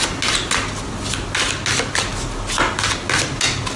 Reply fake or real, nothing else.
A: real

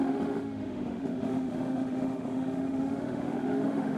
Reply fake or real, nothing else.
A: fake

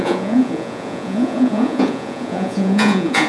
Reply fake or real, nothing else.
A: fake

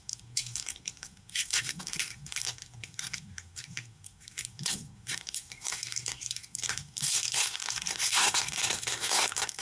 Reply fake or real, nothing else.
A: fake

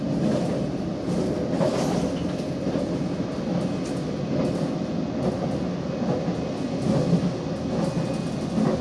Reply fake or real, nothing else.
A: real